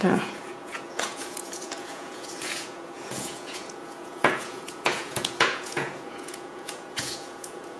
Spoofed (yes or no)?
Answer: yes